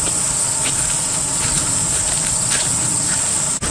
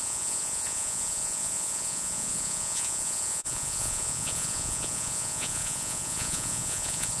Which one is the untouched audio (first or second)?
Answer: first